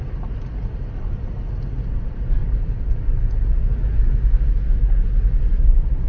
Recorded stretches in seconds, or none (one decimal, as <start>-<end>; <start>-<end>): 0.0-6.1